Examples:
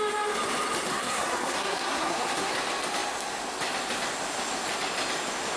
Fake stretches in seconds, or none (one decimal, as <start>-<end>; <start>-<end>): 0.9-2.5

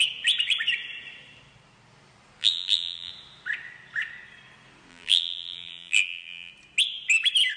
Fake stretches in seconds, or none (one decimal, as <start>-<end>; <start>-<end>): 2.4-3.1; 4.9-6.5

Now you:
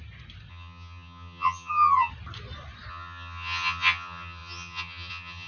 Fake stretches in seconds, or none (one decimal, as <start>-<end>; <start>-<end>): 0.5-2.1; 2.9-5.5

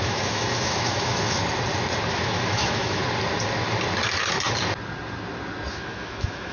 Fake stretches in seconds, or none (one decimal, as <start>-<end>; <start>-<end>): 0.0-1.4; 2.1-3.0; 5.7-6.5